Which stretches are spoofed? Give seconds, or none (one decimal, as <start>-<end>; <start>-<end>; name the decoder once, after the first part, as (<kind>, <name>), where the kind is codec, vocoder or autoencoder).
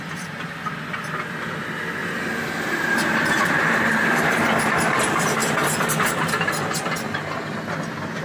2.0-4.4 (vocoder, BigVGAN v2)